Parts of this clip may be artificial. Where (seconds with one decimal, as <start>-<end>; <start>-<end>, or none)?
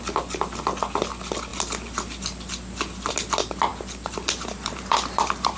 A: 3.7-5.6